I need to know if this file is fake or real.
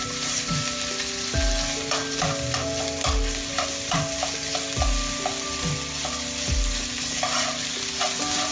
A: real